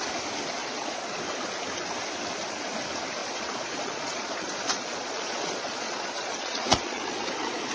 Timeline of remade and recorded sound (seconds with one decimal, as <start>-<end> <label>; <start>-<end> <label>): 0.0-0.6 recorded; 0.6-1.2 remade; 1.2-3.2 recorded; 3.2-7.7 remade